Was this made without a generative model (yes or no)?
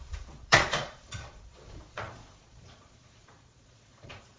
no